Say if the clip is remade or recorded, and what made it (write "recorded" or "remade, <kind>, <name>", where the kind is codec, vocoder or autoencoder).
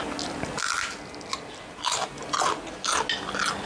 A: recorded